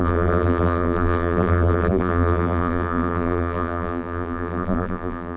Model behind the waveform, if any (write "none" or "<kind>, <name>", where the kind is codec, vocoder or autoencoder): vocoder, BigVGAN v2